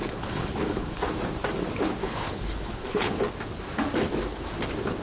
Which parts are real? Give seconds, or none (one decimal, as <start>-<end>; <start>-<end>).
1.0-2.0; 3.2-5.0

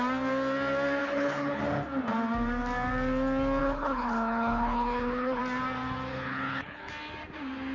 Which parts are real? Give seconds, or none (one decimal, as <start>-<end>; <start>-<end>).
0.0-1.0; 1.6-3.6; 5.4-6.1; 6.9-7.7

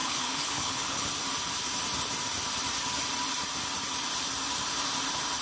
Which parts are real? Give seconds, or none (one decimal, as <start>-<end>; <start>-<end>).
1.1-5.4

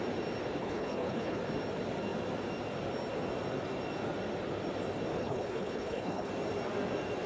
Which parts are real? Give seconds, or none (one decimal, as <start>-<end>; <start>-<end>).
0.0-0.6; 1.4-5.1; 6.3-7.3